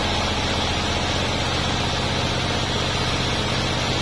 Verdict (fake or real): real